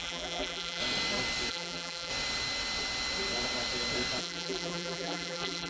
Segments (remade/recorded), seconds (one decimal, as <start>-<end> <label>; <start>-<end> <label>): 0.0-0.8 remade; 0.8-1.5 recorded; 1.5-2.1 remade; 2.1-4.2 recorded; 4.2-5.7 remade